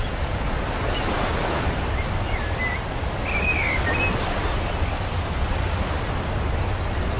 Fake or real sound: real